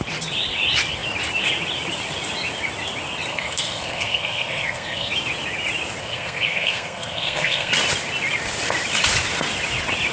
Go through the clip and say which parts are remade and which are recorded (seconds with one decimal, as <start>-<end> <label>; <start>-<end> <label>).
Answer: 0.0-3.3 recorded; 3.3-5.1 remade; 5.1-6.0 recorded; 6.0-7.7 remade; 7.7-10.1 recorded